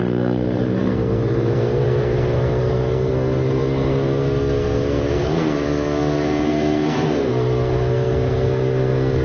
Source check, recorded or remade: remade